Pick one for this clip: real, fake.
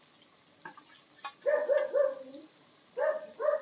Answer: real